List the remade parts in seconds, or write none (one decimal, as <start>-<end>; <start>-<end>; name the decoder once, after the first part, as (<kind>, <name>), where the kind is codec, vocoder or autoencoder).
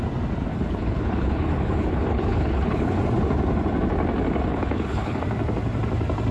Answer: 0.5-3.0 (codec, HILCodec); 4.5-5.2